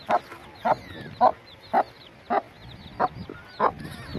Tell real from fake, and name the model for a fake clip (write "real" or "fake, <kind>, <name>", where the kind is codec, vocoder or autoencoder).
real